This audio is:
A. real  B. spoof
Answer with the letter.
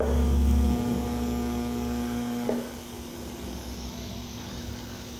B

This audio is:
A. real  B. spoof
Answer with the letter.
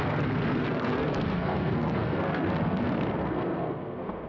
B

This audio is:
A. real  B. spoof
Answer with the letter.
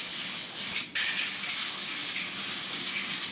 A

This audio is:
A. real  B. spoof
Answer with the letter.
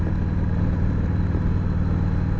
A